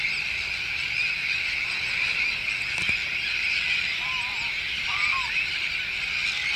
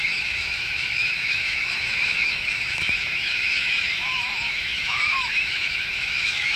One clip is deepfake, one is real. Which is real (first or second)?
first